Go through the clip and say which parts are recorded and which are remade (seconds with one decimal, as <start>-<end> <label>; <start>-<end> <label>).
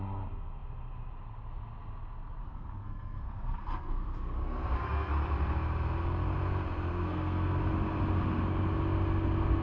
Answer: 0.0-2.4 recorded; 2.4-5.1 remade; 5.1-6.9 recorded; 6.9-7.6 remade; 7.6-9.6 recorded